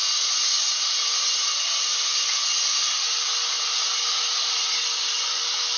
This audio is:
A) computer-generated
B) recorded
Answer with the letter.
B